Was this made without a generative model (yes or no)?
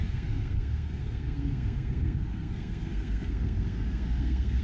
no